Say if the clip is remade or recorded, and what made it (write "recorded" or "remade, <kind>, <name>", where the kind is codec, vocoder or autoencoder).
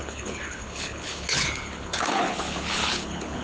remade, codec, HILCodec